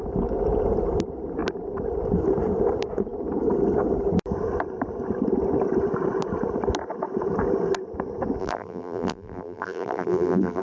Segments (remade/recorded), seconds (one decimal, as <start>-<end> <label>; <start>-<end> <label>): 0.0-8.4 recorded; 8.4-10.6 remade